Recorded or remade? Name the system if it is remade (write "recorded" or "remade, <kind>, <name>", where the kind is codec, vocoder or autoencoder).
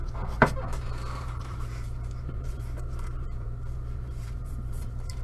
remade, vocoder, BigVGAN v2